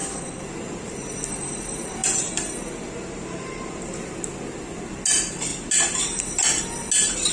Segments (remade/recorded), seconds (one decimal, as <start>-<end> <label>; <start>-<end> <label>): 0.0-7.3 recorded